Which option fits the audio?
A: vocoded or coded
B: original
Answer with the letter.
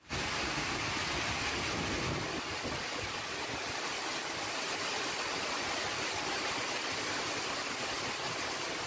B